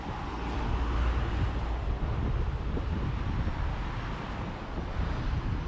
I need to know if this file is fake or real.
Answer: real